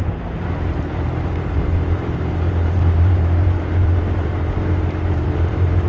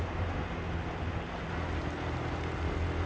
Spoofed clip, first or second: first